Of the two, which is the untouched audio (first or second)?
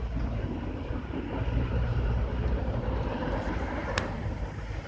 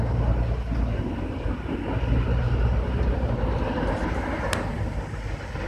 second